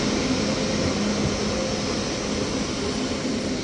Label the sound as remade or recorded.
recorded